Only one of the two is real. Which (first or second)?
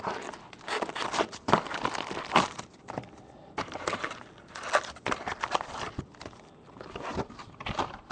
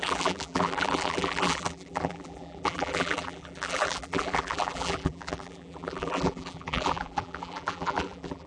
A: first